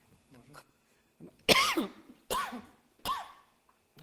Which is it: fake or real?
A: real